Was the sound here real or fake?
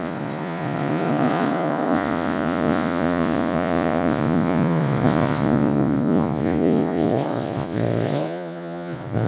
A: fake